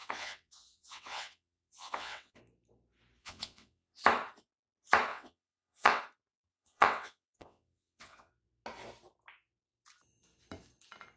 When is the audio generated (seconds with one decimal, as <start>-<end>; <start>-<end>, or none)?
0.0-2.4; 3.2-4.0; 5.1-6.0; 6.5-8.3